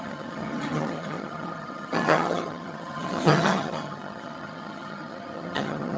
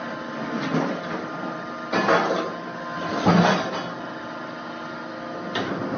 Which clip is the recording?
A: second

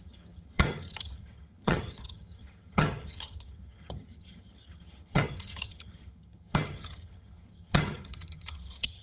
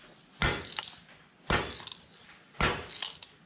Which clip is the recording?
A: second